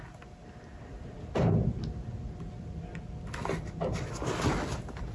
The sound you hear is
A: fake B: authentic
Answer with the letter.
B